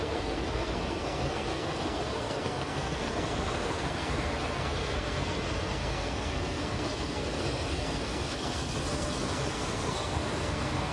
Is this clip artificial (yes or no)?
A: yes